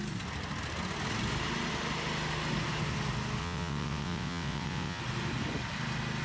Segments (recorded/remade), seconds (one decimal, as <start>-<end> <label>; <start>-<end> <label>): 0.0-3.4 recorded; 3.4-5.0 remade; 5.0-6.2 recorded